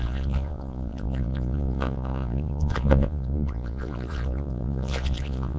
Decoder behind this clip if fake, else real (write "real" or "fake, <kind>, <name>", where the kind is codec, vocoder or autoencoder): fake, vocoder, Vocos